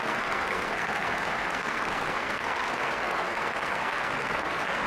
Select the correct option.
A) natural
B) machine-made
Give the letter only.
B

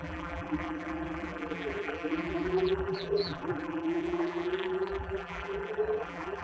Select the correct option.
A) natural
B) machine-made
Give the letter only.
B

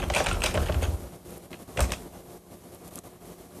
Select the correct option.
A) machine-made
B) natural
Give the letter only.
B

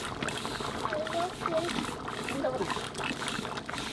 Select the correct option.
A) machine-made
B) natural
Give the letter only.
B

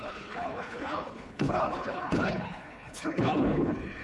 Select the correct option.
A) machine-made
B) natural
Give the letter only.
A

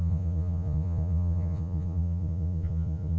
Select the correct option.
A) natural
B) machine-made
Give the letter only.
B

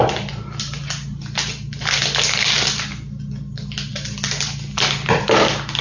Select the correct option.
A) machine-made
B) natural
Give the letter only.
B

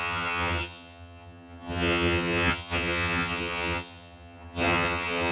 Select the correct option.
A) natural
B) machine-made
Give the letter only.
B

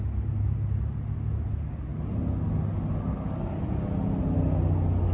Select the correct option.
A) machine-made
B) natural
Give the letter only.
B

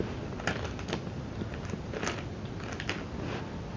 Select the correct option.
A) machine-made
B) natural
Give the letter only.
B